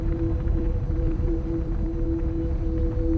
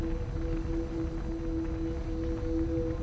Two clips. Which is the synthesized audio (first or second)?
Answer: first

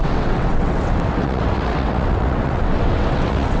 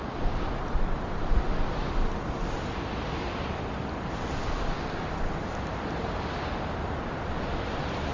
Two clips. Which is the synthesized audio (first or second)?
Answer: first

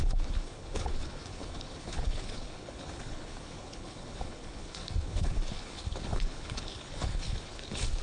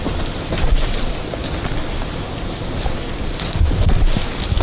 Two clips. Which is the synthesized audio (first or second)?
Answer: first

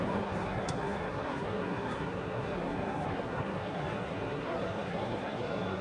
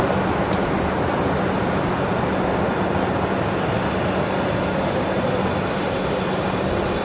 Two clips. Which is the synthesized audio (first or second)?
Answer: first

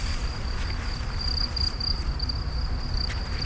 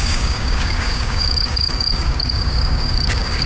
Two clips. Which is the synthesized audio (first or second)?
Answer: second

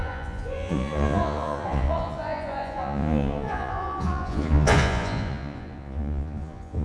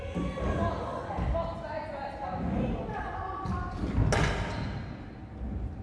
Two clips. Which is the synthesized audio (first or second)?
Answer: first